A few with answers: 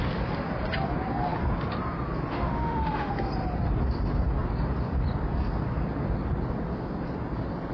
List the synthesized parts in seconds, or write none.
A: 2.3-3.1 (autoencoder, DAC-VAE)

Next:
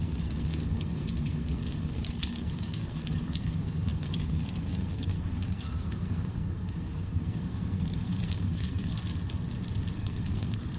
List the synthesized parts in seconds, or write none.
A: 0.0-9.0 (codec, SNAC); 9.9-10.8

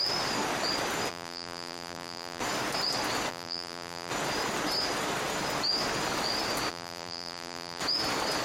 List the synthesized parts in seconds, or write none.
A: 1.1-2.4 (vocoder, BigVGAN v2); 3.3-4.1; 6.7-7.8

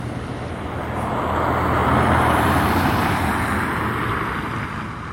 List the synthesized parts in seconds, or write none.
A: 1.8-3.2 (vocoder, BigVGAN v2)